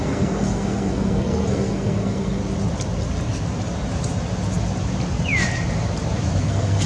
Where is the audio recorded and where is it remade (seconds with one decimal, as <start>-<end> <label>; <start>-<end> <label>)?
0.0-2.4 remade; 2.4-6.4 recorded; 6.4-6.9 remade